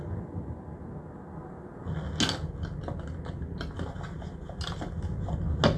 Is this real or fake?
real